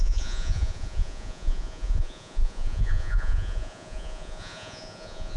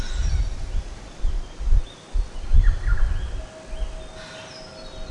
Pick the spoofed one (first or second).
first